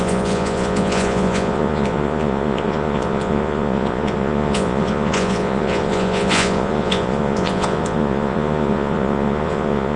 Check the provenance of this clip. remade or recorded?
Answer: remade